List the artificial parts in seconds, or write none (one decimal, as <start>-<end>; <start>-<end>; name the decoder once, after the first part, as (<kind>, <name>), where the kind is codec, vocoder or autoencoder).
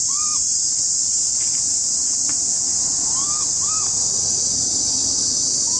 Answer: none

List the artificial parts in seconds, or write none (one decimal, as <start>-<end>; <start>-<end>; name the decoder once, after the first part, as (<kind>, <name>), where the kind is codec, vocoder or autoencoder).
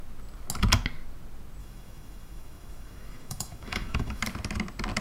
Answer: 1.6-4.2 (autoencoder, DAC-VAE)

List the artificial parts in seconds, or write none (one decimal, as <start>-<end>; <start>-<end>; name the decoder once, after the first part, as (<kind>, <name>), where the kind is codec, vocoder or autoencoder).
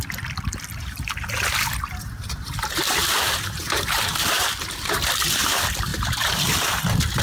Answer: 3.0-4.9 (vocoder, BigVGAN v2); 5.9-6.6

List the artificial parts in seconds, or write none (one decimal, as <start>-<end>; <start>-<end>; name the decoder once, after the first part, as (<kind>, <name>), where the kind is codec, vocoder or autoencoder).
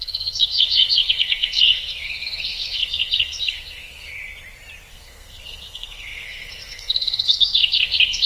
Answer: 0.0-4.1 (codec, SNAC); 4.9-8.3